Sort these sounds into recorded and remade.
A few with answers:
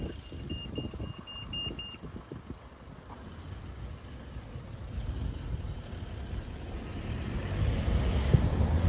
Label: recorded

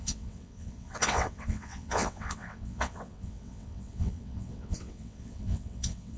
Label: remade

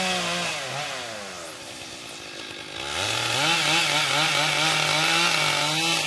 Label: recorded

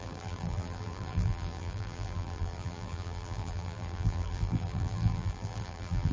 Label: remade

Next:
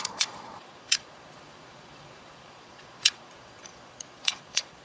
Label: remade